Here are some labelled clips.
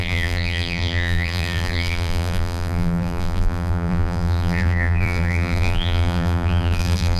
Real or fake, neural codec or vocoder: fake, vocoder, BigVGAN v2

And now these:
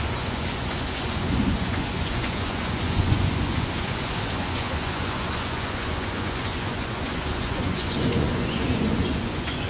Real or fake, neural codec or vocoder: fake, vocoder, Vocos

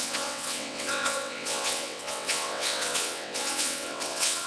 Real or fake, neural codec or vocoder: fake, vocoder, WaveNeXt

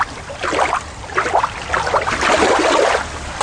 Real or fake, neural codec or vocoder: real